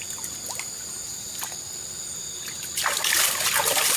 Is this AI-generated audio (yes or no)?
no